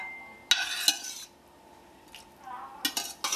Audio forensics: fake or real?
real